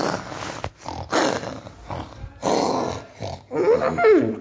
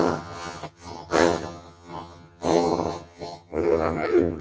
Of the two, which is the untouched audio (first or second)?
first